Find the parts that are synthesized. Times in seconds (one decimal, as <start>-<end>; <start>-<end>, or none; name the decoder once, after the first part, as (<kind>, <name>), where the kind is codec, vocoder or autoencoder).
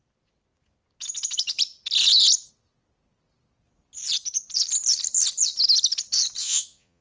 6.4-7.0 (vocoder, Vocos)